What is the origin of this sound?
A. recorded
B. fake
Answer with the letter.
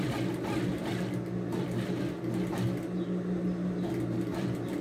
A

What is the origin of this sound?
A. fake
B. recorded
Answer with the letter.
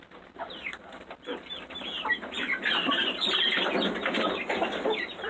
B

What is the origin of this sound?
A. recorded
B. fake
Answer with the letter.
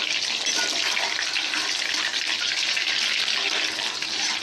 A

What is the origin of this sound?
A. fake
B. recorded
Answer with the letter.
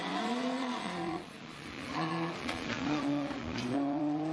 A